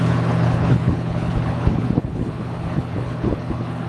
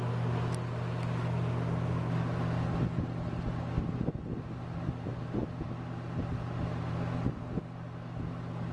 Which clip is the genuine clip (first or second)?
second